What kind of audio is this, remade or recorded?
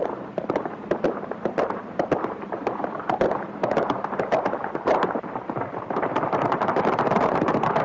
remade